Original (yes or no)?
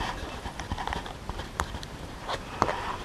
no